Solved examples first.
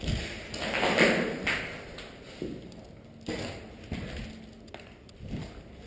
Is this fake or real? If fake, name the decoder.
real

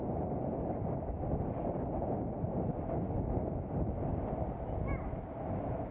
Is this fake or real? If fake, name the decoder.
real